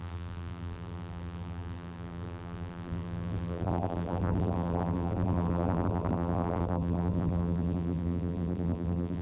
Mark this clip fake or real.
fake